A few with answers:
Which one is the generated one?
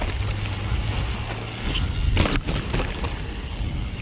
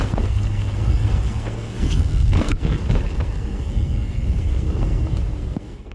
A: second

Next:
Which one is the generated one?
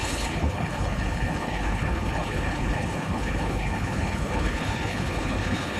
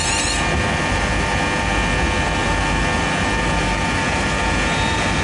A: first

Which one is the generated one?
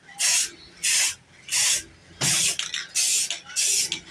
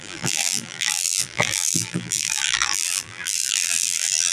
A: second